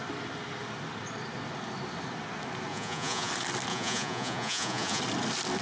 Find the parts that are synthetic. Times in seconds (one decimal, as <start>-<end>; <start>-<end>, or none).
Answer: 2.7-3.3; 3.7-5.0